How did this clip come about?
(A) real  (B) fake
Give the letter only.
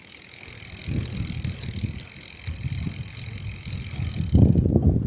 A